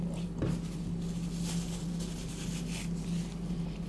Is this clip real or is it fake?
real